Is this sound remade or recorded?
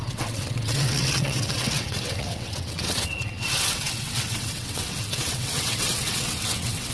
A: remade